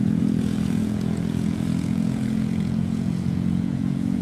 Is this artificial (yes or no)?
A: yes